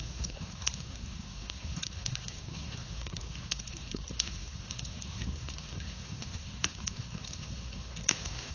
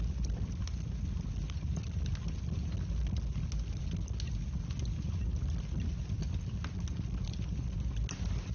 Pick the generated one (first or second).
first